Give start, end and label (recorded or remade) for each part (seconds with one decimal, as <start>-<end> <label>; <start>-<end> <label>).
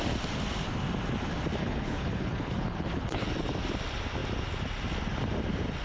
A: 0.0-1.6 recorded; 1.6-3.3 remade; 3.3-5.8 recorded